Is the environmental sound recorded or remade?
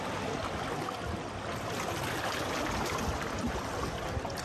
recorded